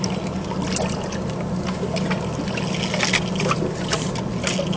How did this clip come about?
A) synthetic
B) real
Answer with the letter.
B